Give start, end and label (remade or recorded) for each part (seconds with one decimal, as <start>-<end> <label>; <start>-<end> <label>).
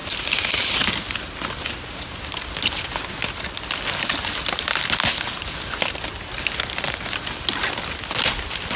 0.0-8.8 recorded